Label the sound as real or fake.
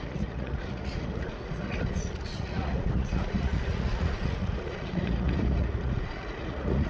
fake